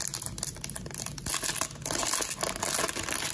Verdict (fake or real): real